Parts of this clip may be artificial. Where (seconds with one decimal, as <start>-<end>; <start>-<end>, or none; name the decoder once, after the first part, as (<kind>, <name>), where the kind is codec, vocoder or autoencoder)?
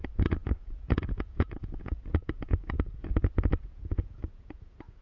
0.0-5.0 (vocoder, Vocos)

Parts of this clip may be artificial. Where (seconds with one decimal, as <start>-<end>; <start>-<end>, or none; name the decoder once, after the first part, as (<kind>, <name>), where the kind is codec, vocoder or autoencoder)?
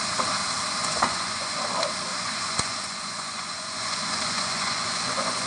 0.8-1.6 (vocoder, Vocos); 2.1-5.5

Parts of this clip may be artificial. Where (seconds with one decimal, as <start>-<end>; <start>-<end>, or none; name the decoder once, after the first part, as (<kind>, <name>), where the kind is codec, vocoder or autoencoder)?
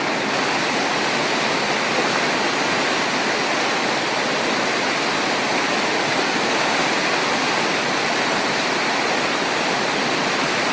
none